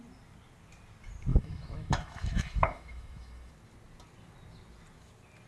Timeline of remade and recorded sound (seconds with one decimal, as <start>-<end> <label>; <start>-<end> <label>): 0.0-1.3 recorded; 1.3-3.5 remade; 3.5-5.5 recorded